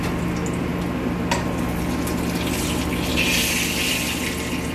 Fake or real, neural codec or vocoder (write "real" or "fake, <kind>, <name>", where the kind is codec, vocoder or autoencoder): real